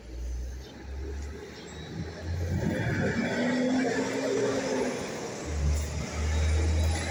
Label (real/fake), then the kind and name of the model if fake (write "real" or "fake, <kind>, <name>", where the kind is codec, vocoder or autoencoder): real